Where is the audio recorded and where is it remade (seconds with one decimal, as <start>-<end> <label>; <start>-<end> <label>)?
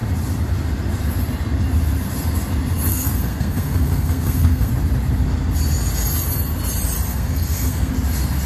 0.0-2.9 recorded; 2.9-4.7 remade; 4.7-7.1 recorded; 7.1-7.9 remade; 7.9-8.5 recorded